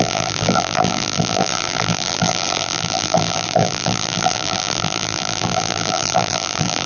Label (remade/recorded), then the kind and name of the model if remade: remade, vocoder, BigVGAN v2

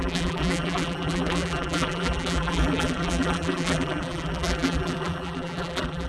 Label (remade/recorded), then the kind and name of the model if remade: remade, vocoder, BigVGAN v2